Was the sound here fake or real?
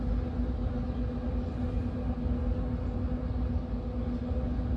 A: real